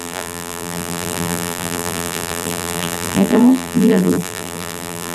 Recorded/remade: remade